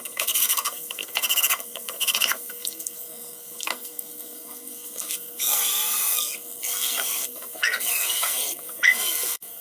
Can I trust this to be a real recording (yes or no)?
no